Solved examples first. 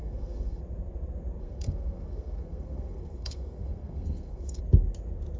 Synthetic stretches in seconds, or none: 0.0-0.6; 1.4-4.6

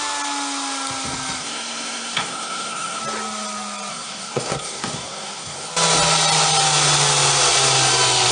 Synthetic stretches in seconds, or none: 1.4-3.0; 3.9-5.7

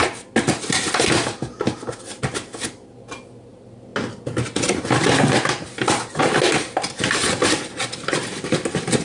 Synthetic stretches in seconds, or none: none

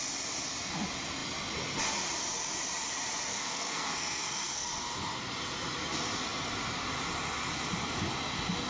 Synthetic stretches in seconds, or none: 3.3-4.7

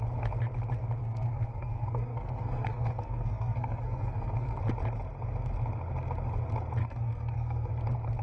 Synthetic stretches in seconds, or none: 1.0-4.6; 6.8-7.7

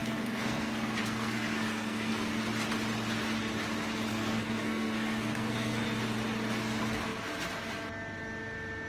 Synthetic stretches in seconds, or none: 0.0-2.3; 4.1-5.8

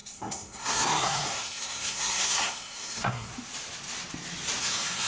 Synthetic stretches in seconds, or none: 0.0-3.3; 4.6-5.1

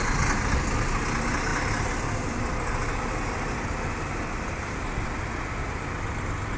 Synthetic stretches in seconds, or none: none